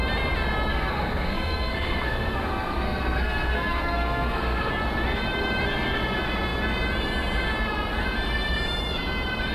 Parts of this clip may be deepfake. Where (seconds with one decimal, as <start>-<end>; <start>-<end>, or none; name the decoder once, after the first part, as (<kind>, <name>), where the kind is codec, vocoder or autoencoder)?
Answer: 0.7-4.7 (codec, SNAC)